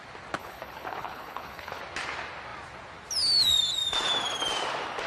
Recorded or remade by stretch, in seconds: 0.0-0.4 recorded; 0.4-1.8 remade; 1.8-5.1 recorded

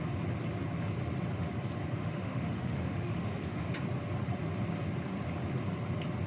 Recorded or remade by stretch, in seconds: 0.0-2.0 recorded; 2.0-3.7 remade; 3.7-6.3 recorded